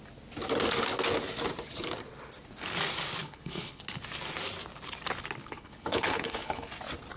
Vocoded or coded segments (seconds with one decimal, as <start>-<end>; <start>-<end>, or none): 3.2-3.8; 5.4-6.7